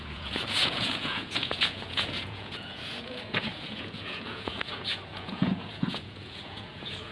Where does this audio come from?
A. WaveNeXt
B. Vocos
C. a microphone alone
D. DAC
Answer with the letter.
B